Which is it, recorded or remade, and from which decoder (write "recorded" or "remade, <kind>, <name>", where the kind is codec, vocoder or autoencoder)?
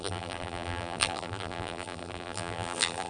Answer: remade, vocoder, BigVGAN v2